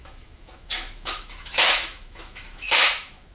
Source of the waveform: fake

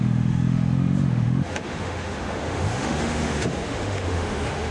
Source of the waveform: fake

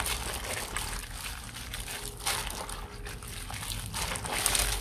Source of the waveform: real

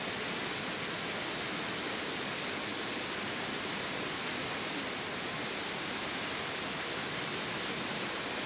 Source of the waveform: real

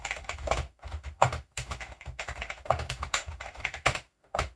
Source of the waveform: fake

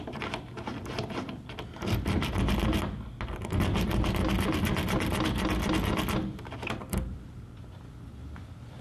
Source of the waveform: real